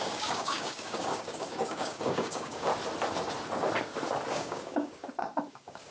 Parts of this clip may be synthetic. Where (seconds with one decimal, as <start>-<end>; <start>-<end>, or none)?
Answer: 0.0-2.7; 4.3-5.0; 5.5-5.9